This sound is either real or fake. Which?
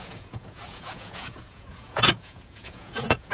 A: fake